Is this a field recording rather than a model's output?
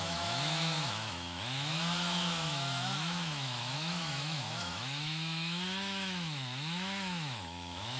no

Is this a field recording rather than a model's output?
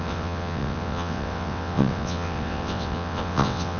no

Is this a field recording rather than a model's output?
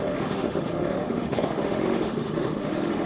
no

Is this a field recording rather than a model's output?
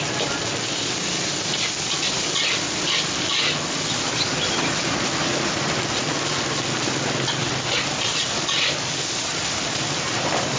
yes